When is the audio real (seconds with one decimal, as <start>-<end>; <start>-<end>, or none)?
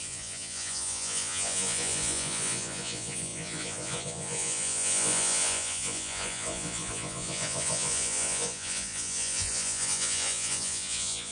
none